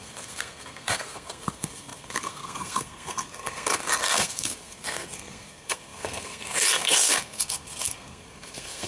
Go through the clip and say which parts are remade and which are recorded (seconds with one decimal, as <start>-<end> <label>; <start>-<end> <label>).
0.0-8.9 remade